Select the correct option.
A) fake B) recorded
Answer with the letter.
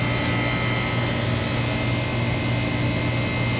B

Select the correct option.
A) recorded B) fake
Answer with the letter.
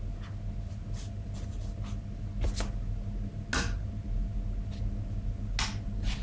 A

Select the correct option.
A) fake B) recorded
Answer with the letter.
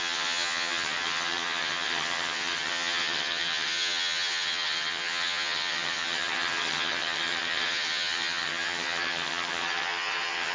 A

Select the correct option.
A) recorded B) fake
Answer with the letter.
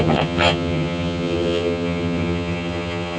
B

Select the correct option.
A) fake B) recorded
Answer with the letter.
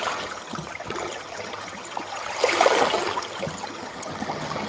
A